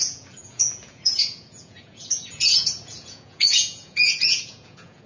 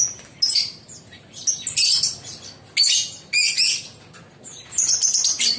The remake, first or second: first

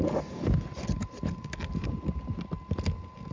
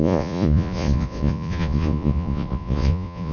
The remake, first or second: second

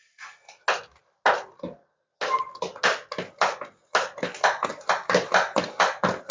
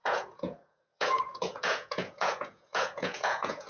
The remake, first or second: second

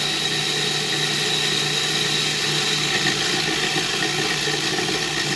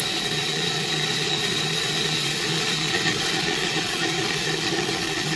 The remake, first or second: second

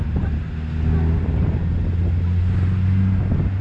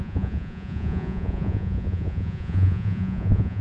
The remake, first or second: second